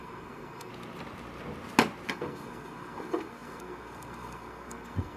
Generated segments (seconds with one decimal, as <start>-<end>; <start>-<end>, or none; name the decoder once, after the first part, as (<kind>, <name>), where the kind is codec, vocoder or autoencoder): 0.0-0.7 (codec, SNAC); 2.1-5.2